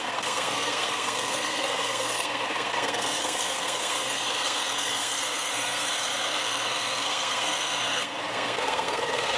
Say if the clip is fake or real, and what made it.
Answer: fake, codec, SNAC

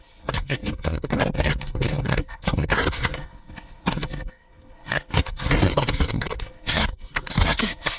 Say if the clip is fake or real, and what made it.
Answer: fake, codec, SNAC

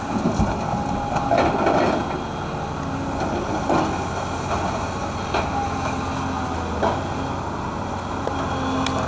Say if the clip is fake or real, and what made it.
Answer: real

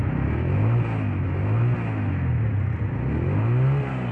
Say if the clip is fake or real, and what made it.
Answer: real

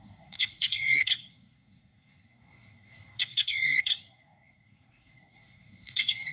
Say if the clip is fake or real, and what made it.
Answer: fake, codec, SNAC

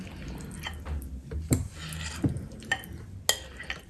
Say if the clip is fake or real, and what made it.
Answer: real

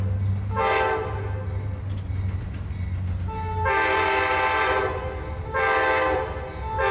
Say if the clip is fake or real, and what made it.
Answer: real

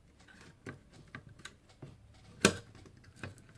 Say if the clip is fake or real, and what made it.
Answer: real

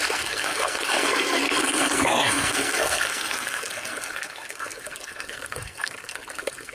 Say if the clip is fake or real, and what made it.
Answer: fake, codec, SNAC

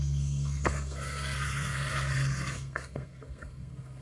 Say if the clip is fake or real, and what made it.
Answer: fake, codec, SNAC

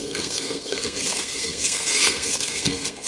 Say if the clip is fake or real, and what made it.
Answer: fake, codec, SNAC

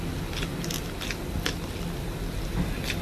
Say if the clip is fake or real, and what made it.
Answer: real